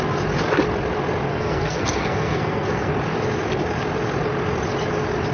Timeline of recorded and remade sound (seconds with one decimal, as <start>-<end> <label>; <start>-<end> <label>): 0.0-1.3 recorded; 1.3-2.9 remade; 2.9-5.3 recorded